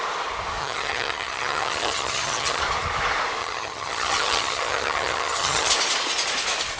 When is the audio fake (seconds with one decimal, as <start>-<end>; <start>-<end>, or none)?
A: 0.6-2.6; 3.4-5.7